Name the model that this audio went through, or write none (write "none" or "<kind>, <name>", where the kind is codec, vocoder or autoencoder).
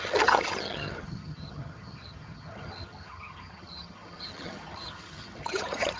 vocoder, HiFi-GAN